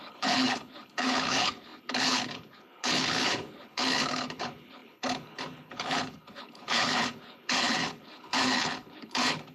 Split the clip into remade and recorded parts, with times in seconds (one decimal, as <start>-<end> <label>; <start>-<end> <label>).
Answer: 0.0-9.5 remade